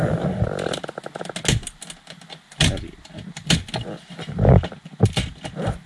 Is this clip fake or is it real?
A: real